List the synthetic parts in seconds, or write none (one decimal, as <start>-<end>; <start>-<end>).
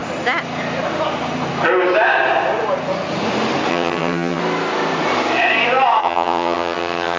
3.7-4.4; 6.0-7.2